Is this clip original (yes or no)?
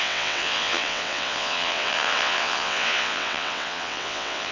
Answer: no